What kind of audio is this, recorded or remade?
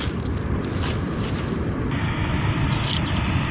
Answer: recorded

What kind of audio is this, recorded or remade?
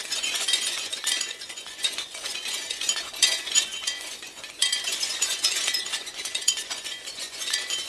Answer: remade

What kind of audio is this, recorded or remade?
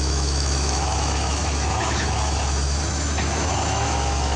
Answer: remade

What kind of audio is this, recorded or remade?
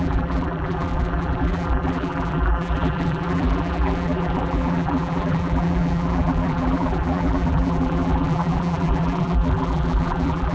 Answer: remade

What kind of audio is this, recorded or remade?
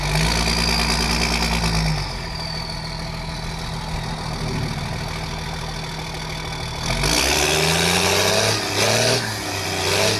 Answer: recorded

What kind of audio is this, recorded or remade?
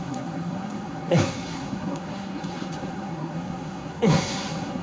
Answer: remade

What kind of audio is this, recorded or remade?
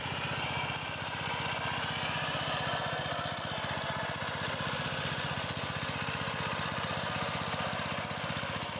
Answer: recorded